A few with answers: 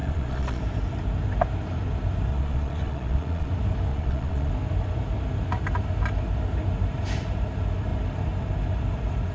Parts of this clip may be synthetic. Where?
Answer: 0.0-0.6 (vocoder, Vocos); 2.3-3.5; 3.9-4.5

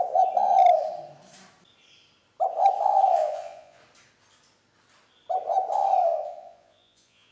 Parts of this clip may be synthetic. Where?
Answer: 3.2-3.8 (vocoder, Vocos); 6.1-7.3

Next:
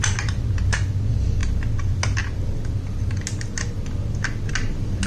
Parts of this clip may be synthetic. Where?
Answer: none

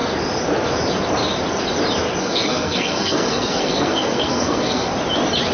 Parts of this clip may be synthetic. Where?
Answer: 2.2-4.9 (codec, SNAC)

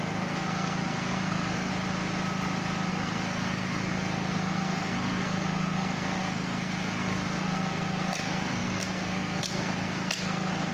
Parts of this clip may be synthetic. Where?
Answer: 0.0-1.7 (codec, SNAC); 2.9-10.7